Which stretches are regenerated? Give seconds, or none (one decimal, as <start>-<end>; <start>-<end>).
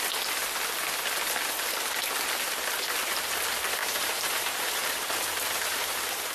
3.8-6.3